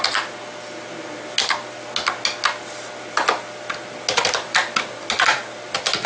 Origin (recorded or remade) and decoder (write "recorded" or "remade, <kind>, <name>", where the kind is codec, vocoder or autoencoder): recorded